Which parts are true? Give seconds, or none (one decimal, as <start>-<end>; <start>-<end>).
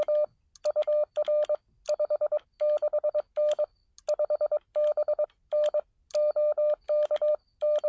0.0-7.9